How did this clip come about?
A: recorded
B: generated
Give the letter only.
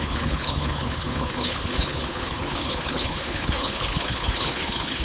B